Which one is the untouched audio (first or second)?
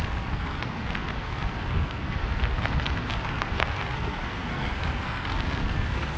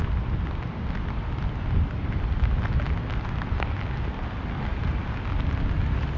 second